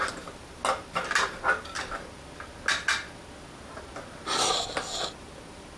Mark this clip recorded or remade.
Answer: recorded